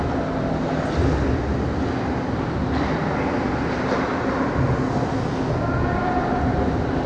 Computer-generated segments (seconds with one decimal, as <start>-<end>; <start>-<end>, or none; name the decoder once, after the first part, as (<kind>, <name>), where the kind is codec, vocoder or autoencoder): none

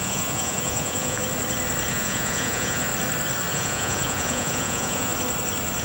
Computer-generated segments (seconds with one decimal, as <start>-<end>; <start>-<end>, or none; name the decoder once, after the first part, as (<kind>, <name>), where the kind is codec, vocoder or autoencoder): 0.0-1.2 (vocoder, Vocos); 1.9-2.9; 3.5-5.1

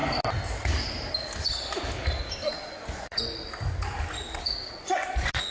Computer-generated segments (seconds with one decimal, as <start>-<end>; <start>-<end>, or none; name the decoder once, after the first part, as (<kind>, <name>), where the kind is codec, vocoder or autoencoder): 2.5-3.4 (vocoder, Vocos); 4.7-5.5